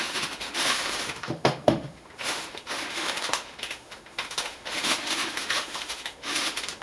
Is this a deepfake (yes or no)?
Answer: yes